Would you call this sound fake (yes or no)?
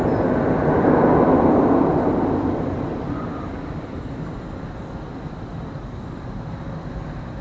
no